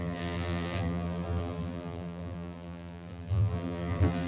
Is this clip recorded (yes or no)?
no